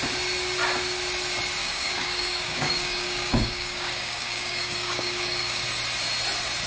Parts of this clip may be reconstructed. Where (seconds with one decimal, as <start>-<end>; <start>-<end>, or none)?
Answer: 1.6-5.6